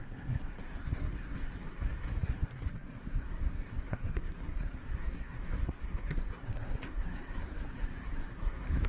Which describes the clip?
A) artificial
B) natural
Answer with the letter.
A